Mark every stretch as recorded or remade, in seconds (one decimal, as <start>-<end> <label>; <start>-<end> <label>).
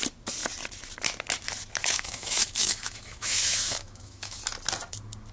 0.0-1.8 recorded; 1.8-4.4 remade; 4.4-5.3 recorded